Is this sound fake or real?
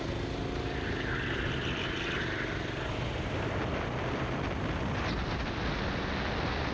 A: real